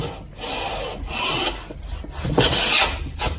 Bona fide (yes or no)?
yes